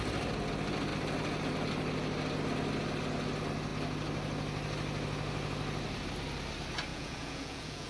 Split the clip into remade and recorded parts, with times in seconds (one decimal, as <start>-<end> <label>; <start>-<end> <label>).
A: 0.0-6.9 recorded; 6.9-7.9 remade